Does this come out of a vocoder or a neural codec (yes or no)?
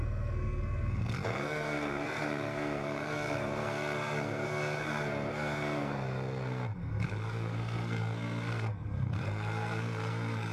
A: yes